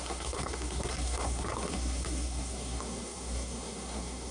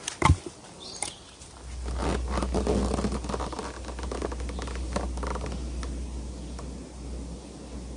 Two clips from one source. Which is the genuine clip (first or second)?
second